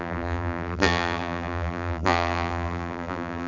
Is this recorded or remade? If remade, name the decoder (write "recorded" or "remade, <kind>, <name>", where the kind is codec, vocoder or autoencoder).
remade, vocoder, BigVGAN v2